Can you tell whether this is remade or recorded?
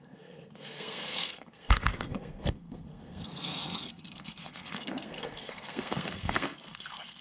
remade